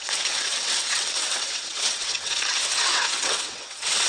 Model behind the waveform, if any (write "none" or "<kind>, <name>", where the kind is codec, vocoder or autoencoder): vocoder, WaveNeXt